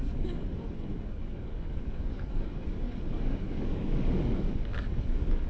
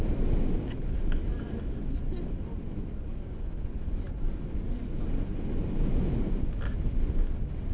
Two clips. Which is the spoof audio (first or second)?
first